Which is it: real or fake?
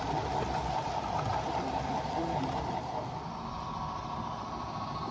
real